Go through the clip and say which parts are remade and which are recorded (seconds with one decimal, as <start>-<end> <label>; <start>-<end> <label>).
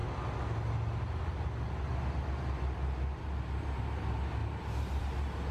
0.0-5.5 recorded